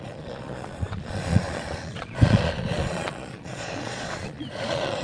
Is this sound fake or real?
fake